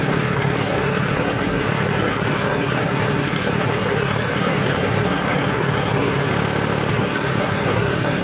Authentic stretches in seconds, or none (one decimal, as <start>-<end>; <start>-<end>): 6.3-6.9